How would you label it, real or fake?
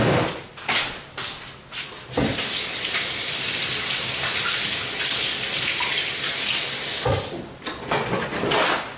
real